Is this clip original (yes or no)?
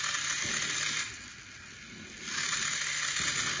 yes